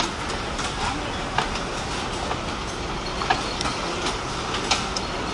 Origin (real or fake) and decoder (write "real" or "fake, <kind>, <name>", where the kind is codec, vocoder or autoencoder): real